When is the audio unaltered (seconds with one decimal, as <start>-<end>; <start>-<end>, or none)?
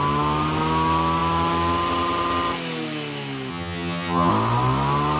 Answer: 0.0-3.5; 4.3-5.2